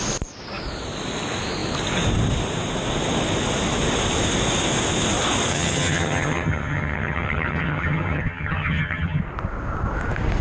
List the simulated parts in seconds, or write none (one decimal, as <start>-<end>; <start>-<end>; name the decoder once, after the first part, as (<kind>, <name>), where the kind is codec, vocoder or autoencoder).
5.5-9.2 (vocoder, HiFi-GAN)